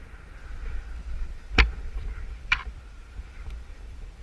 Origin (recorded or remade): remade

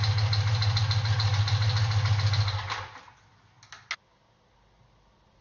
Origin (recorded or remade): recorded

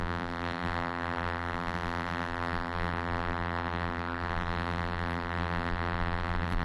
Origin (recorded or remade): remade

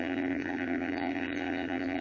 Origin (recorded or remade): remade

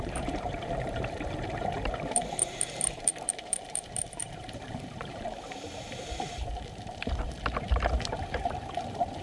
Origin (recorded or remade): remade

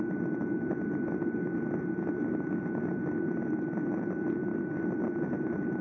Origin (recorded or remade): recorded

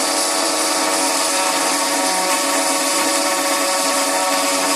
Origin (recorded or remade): remade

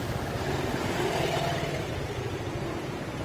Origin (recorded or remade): remade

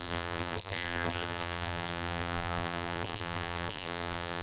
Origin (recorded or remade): remade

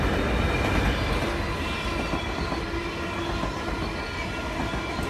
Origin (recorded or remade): recorded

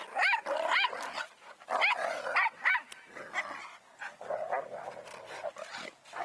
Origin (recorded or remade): recorded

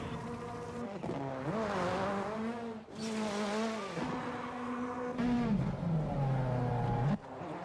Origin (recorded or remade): recorded